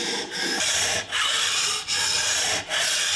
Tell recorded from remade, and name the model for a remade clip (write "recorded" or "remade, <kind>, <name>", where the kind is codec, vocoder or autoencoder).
recorded